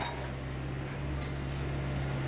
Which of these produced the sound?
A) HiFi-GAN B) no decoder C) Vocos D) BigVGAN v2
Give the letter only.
B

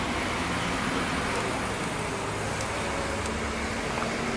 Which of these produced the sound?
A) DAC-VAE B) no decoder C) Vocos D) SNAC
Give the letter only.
B